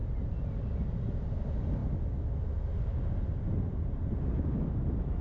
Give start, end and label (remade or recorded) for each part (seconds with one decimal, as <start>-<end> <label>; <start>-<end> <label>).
0.0-5.2 recorded